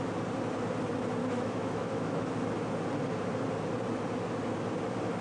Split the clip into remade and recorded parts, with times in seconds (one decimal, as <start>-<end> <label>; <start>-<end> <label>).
0.0-1.2 recorded; 1.2-2.3 remade; 2.3-5.2 recorded